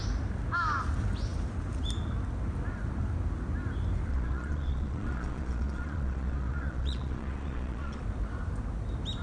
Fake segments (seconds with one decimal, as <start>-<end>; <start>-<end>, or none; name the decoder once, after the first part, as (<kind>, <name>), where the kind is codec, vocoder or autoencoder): 4.1-8.0 (vocoder, Vocos)